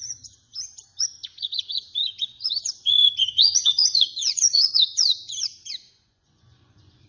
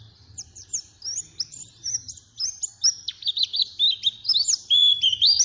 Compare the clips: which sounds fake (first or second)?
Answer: first